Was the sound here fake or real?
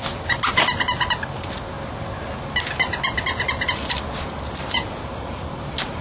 real